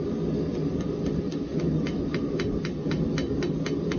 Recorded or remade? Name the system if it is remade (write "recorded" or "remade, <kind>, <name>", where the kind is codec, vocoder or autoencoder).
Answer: recorded